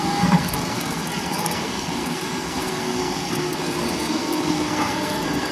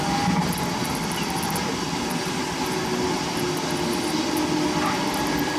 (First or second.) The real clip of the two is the second